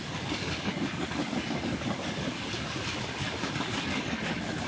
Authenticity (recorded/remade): remade